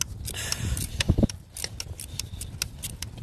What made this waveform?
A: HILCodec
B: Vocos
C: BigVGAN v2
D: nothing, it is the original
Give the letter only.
D